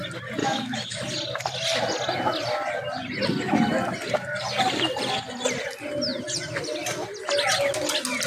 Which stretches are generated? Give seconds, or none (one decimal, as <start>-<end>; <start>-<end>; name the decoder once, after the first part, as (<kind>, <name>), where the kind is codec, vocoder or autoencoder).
0.4-1.0 (autoencoder, DAC-VAE)